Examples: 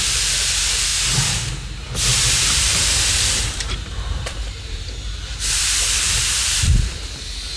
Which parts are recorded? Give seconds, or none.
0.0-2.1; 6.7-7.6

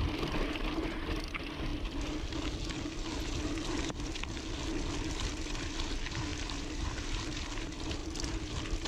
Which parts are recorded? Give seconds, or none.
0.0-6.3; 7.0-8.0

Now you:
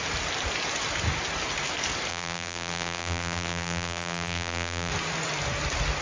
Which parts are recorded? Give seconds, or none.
0.0-2.1; 4.9-6.0